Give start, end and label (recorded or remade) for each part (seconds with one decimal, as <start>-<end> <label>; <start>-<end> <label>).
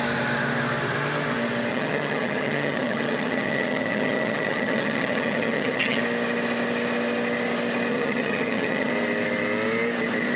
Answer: 0.0-1.7 recorded; 1.7-6.0 remade; 6.0-7.9 recorded; 7.9-8.9 remade; 8.9-10.4 recorded